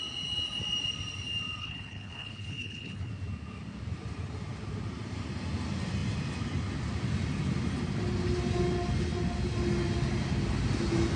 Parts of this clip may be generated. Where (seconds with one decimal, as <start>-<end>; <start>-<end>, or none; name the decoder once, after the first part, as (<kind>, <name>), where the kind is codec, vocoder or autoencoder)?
1.6-3.1 (codec, HILCodec)